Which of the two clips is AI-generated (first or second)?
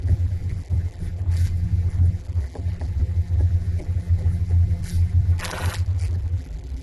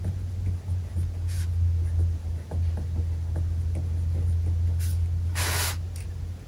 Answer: first